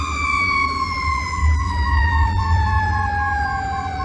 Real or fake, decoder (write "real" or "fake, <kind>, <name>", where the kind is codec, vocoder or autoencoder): fake, vocoder, Vocos